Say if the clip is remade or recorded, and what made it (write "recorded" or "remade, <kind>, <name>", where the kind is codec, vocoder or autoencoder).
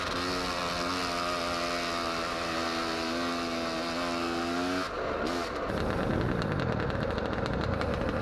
recorded